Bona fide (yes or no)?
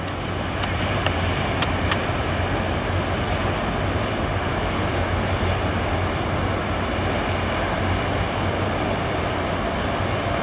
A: yes